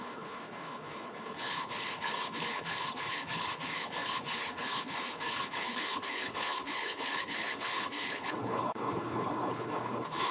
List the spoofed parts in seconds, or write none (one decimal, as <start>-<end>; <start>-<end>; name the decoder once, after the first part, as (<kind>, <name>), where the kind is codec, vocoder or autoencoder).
0.0-10.3 (codec, HILCodec)